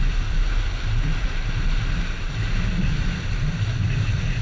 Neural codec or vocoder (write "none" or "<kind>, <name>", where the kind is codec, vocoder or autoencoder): none